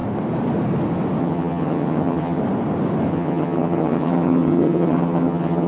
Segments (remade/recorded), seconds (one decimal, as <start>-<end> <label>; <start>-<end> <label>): 0.0-1.2 recorded; 1.2-2.4 remade; 2.4-3.1 recorded; 3.1-5.7 remade